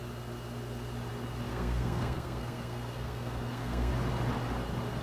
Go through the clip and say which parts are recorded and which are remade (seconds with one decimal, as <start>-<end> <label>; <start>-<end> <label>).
0.0-1.5 recorded; 1.5-3.9 remade; 3.9-5.0 recorded